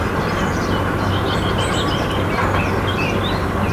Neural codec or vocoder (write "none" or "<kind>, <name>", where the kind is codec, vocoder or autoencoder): none